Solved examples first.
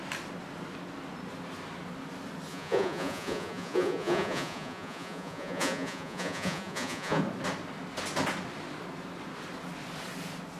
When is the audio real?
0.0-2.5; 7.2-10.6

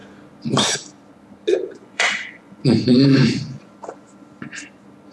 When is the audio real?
0.0-1.5; 3.7-5.1

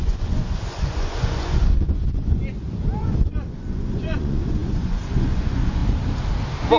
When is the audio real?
2.4-3.0; 5.8-6.8

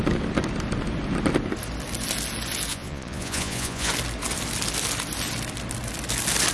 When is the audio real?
0.0-2.7; 3.9-6.5

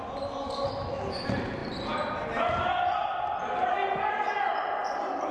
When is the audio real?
0.0-5.3